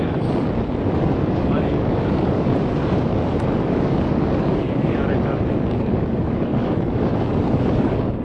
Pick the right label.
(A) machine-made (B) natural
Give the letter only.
A